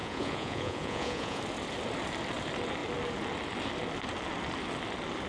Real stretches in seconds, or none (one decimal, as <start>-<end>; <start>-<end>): 1.4-5.3